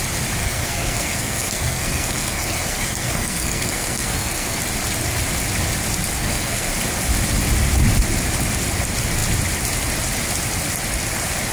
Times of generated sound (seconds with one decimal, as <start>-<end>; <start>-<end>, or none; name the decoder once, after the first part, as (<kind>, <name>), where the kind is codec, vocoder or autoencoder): 0.4-4.6 (codec, SNAC); 6.1-6.7

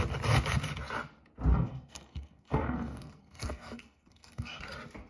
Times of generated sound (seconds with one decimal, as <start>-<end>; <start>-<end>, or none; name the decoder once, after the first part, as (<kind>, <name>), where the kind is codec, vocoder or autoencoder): 1.5-4.6 (codec, SNAC)

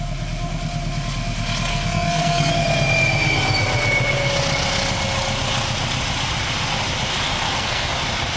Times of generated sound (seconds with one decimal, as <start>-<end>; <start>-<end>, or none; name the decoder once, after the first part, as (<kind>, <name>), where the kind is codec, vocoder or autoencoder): 1.7-2.5 (codec, SNAC); 7.3-7.9